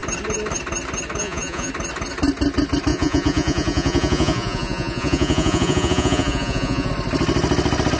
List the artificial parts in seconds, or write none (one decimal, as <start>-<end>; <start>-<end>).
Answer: 1.2-1.7; 2.9-6.9